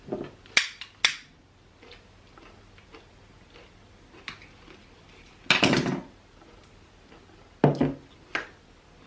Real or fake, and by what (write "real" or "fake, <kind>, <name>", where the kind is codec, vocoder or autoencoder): real